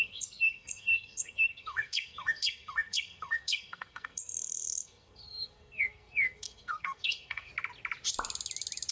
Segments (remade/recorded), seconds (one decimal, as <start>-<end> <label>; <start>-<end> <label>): 0.0-7.5 remade; 7.5-8.9 recorded